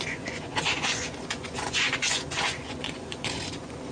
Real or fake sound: fake